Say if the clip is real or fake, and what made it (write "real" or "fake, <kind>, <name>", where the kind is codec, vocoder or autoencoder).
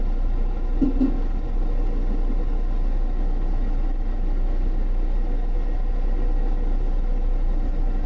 real